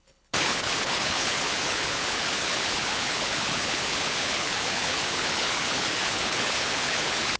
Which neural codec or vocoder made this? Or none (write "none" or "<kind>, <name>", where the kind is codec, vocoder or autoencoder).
codec, HILCodec